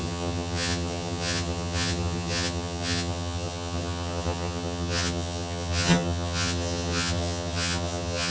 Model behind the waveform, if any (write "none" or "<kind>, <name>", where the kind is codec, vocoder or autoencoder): vocoder, HiFi-GAN